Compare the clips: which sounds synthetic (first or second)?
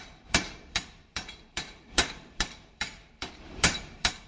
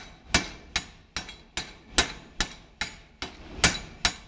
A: first